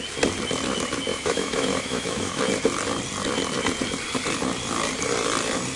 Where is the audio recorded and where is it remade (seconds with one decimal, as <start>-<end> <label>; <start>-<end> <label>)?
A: 0.0-1.1 recorded; 1.1-2.4 remade; 2.4-5.8 recorded